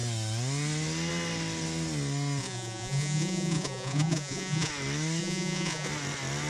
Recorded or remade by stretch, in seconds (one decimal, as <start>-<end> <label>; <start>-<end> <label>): 0.0-2.4 recorded; 2.4-4.7 remade; 4.7-5.2 recorded; 5.2-5.9 remade; 5.9-6.5 recorded